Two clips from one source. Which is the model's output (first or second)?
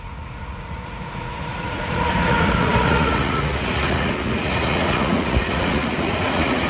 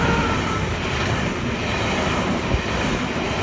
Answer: first